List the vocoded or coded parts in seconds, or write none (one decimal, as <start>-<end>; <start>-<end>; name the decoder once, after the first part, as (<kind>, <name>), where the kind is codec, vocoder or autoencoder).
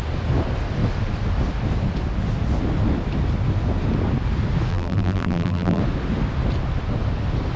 4.7-5.8 (vocoder, BigVGAN v2)